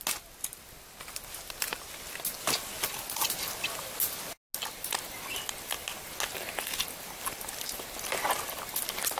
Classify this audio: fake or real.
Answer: real